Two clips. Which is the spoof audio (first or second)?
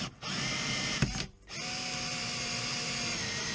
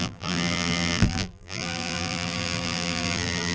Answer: second